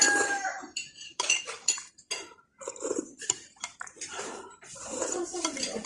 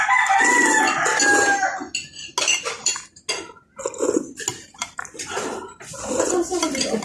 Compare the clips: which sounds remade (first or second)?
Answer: first